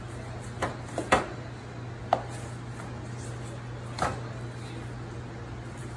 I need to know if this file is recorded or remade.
recorded